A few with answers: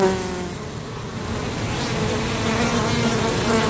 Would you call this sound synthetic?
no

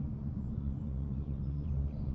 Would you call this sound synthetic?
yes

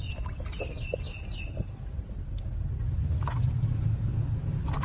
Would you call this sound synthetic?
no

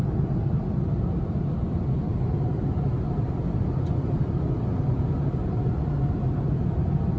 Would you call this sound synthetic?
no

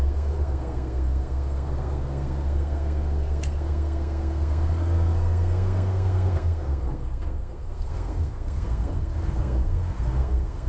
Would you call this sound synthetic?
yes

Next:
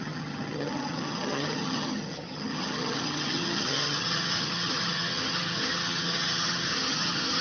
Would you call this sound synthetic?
yes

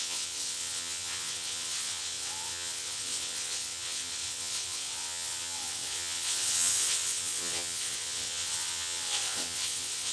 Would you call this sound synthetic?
yes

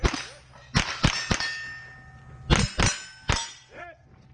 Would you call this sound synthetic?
no